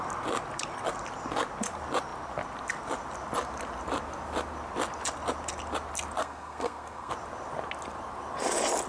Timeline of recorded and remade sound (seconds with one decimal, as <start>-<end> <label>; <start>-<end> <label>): 0.0-6.2 recorded; 6.2-7.1 remade; 7.1-8.9 recorded